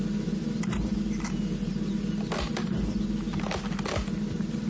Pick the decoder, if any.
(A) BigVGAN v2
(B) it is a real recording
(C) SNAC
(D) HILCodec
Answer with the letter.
B